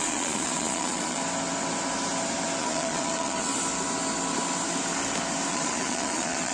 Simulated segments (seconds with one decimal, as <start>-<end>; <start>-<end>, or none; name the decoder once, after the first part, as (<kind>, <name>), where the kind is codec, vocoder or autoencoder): 0.0-1.2 (vocoder, Vocos); 2.6-3.5; 5.5-6.5